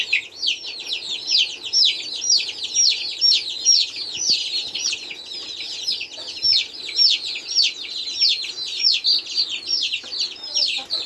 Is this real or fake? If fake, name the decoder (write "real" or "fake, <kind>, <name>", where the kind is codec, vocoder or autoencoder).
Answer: real